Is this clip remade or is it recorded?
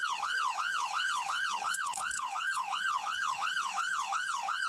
remade